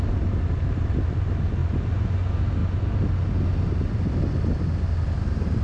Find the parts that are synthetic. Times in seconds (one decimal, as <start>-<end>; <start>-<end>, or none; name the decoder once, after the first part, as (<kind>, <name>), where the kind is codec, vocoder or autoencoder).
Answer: 1.6-2.2 (vocoder, BigVGAN v2)